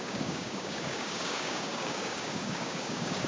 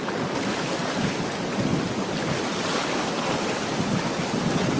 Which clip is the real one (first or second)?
second